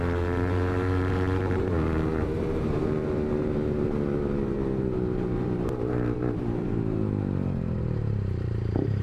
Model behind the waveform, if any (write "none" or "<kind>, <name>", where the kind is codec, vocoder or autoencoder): vocoder, BigVGAN v2